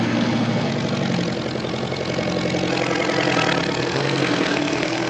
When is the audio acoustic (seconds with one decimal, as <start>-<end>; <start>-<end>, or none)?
0.7-3.8